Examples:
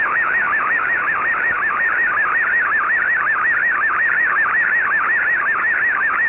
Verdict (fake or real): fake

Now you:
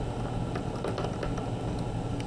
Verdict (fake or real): real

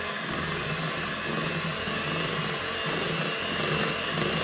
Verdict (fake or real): real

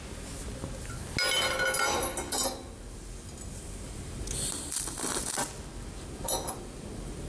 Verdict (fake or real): real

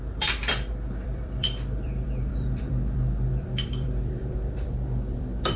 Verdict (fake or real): fake